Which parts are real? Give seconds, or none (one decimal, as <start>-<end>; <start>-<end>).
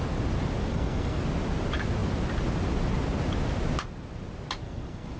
0.0-0.7; 1.2-4.6